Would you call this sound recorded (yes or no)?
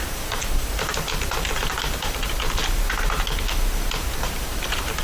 no